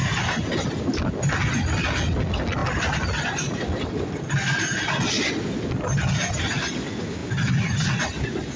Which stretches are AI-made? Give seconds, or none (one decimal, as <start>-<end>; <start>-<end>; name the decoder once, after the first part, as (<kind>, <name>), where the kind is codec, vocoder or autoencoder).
none